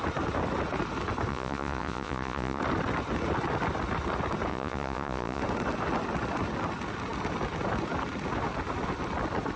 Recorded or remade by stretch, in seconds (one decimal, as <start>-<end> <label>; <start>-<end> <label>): 0.0-1.3 recorded; 1.3-2.6 remade; 2.6-4.5 recorded; 4.5-5.4 remade; 5.4-9.6 recorded